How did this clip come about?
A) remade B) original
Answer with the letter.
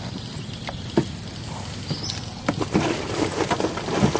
B